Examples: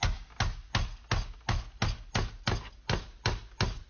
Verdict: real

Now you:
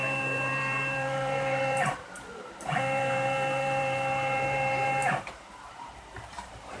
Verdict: fake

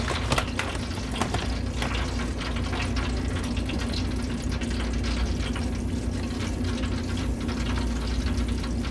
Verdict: real